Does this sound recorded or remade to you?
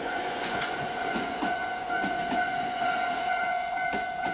remade